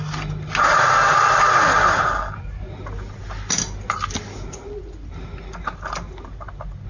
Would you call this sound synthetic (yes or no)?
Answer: no